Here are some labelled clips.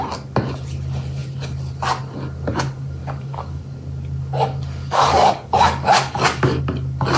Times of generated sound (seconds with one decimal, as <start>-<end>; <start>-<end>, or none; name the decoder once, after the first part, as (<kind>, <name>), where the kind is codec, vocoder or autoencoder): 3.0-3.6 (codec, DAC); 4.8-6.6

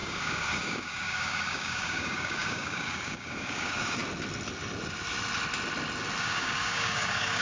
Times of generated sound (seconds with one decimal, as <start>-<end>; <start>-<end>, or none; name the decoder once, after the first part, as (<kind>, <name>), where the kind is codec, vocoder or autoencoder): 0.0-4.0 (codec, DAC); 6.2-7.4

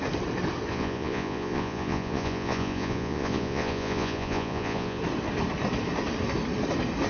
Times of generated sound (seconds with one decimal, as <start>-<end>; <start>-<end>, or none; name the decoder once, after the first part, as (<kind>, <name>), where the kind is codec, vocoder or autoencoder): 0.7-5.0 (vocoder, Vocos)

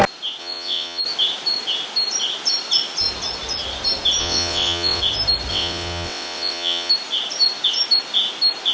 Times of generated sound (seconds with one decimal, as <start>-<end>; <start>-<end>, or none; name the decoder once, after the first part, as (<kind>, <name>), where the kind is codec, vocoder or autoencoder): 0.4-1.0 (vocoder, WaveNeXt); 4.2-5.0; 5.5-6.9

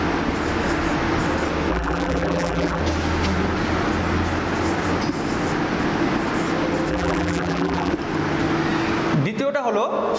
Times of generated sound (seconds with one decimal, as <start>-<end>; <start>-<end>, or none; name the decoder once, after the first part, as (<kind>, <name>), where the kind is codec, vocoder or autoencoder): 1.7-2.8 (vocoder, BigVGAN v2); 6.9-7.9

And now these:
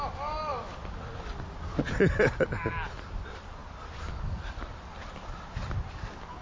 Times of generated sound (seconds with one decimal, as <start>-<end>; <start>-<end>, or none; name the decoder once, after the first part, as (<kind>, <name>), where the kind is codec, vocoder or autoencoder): none

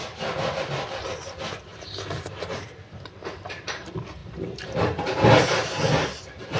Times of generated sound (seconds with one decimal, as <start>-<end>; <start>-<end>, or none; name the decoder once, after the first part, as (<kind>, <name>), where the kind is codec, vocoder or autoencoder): 0.0-0.7 (vocoder, BigVGAN v2); 1.7-2.5; 4.2-5.0

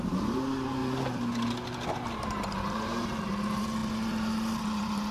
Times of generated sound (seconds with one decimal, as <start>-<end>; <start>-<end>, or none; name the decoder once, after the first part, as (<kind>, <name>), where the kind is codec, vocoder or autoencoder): 0.0-5.1 (vocoder, BigVGAN v2)